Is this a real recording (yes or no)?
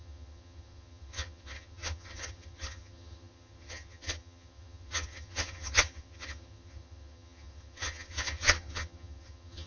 no